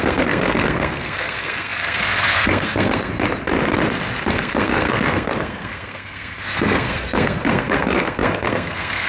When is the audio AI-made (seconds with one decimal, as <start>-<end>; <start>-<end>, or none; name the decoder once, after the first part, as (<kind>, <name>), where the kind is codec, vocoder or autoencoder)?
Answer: 0.0-3.1 (codec, SNAC); 4.3-9.1